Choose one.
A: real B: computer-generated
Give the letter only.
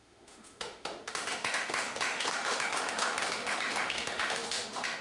B